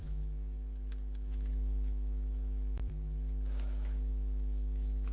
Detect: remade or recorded remade